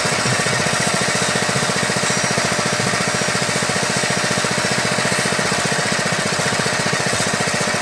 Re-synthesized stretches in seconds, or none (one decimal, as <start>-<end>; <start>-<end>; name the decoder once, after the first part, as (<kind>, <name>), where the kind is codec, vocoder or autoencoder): 0.0-1.0 (vocoder, WaveNeXt); 5.4-7.8